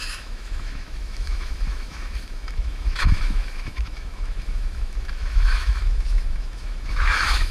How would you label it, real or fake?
fake